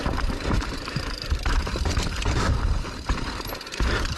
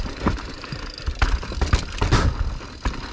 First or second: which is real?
second